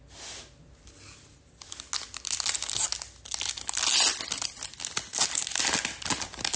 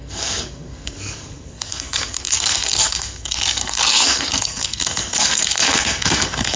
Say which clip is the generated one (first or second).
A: second